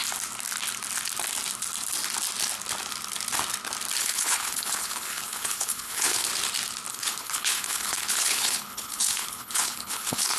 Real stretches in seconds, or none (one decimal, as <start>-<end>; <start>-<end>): 0.0-4.0; 6.3-6.9